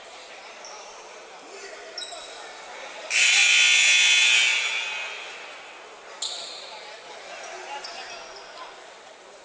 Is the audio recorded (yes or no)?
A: yes